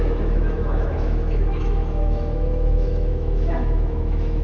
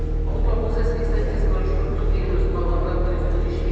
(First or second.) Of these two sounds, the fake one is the first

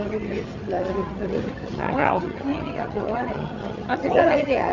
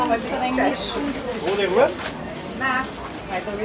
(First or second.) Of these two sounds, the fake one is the first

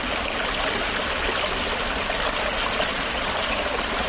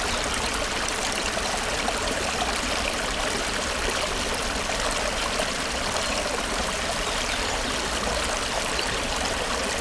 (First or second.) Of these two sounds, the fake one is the second